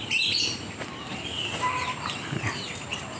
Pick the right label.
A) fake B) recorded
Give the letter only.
B